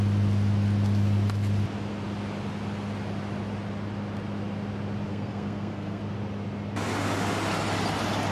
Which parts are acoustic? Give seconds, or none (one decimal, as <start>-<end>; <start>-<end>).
0.0-5.1; 6.0-8.3